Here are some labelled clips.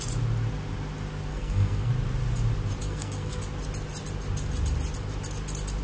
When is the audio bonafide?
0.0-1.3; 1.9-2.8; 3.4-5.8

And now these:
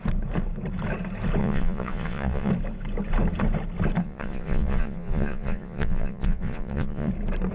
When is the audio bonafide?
0.0-1.4; 2.5-4.0; 7.1-7.5

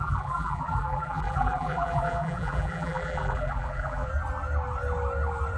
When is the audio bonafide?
4.1-5.6

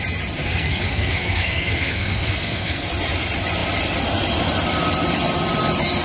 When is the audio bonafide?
0.0-0.4; 2.9-6.0